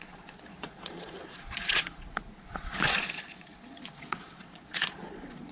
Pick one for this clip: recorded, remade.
remade